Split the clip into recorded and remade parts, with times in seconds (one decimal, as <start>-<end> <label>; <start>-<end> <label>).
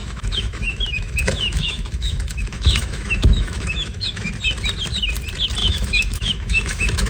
0.0-4.3 remade; 4.3-5.6 recorded; 5.6-7.1 remade